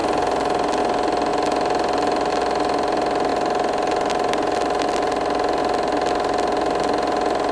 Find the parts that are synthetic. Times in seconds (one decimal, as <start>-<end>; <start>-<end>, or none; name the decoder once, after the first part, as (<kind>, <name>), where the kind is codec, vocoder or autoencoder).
none